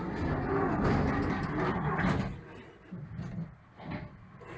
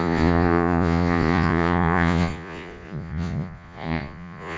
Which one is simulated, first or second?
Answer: second